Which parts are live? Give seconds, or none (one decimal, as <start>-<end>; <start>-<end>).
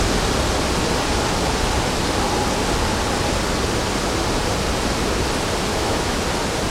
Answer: 0.0-5.7; 6.2-6.7